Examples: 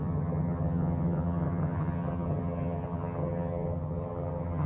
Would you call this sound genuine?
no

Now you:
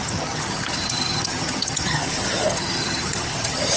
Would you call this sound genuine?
no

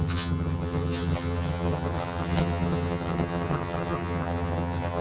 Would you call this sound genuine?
no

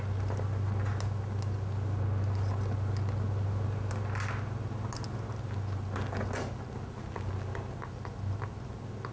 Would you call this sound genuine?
yes